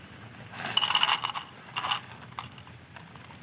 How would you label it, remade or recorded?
recorded